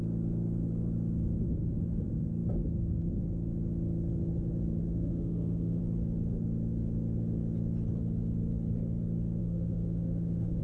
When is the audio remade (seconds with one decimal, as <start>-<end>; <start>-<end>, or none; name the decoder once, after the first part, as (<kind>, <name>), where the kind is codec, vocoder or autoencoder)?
4.8-5.8 (autoencoder, DAC-VAE); 9.4-10.6